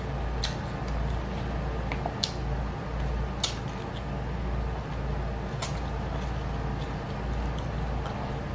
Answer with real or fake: real